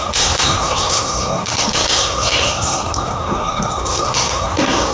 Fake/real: fake